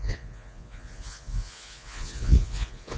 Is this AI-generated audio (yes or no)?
yes